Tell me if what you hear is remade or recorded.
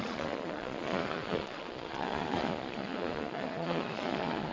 remade